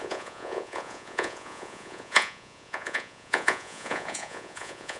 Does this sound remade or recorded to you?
remade